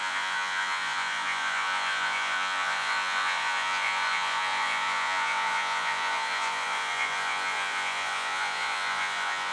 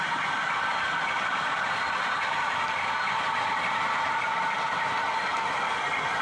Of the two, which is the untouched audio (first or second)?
second